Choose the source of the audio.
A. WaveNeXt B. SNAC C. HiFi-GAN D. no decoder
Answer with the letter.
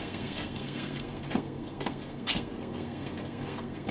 B